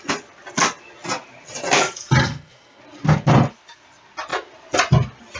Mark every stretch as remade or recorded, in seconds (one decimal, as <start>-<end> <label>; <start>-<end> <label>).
0.0-2.2 recorded; 2.2-2.8 remade; 2.8-5.4 recorded